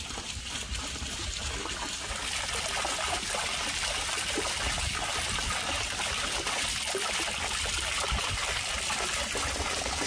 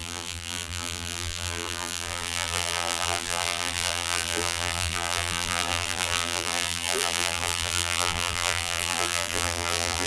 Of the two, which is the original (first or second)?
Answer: first